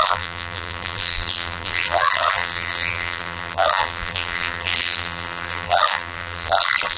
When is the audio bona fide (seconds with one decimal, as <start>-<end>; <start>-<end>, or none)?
none